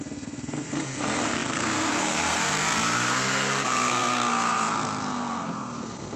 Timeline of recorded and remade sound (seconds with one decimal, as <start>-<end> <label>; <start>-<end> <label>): 0.0-6.2 remade